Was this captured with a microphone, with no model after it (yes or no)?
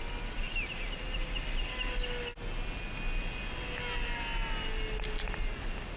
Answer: yes